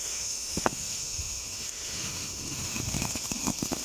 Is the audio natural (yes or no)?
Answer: no